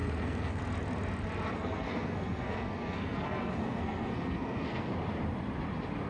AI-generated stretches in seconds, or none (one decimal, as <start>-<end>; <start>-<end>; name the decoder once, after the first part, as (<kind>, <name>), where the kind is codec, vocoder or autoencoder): 0.0-0.6 (codec, SNAC); 1.5-4.9